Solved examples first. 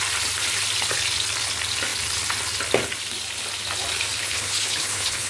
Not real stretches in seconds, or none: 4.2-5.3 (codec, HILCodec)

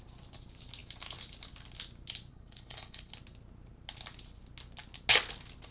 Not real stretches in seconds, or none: 2.3-3.1 (codec, HILCodec)